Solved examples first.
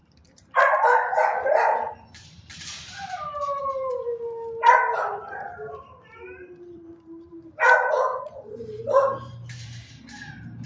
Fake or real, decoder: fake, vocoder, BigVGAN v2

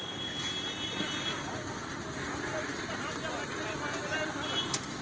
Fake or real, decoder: real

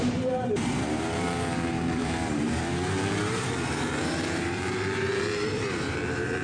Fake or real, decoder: fake, vocoder, BigVGAN v2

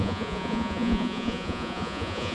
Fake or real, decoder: fake, vocoder, Vocos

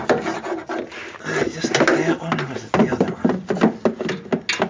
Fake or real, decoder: real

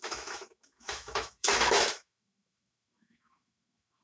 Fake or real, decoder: fake, autoencoder, DAC-VAE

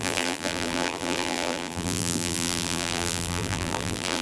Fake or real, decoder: fake, vocoder, BigVGAN v2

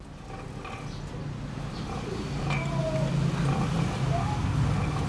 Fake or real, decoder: real